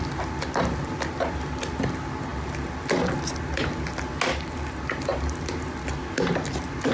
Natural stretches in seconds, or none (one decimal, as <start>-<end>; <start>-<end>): 0.0-6.9